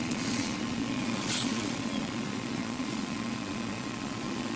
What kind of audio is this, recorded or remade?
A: remade